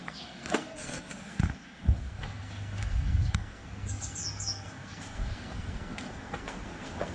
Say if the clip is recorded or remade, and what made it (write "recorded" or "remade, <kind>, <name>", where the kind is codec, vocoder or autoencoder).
remade, codec, SNAC